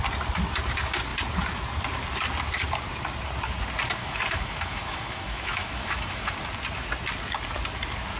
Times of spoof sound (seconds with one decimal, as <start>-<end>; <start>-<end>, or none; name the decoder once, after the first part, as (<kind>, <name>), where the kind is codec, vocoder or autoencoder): 4.0-6.3 (autoencoder, DAC-VAE)